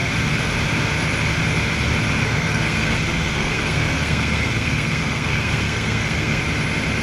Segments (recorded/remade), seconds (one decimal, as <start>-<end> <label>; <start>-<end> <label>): 0.0-2.2 recorded; 2.2-6.4 remade; 6.4-7.0 recorded